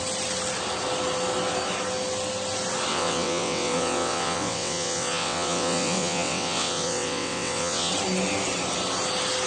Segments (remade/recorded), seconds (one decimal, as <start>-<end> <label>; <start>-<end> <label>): 0.0-2.9 recorded; 2.9-7.9 remade; 7.9-9.5 recorded